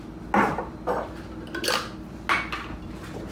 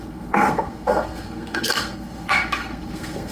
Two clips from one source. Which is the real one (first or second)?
first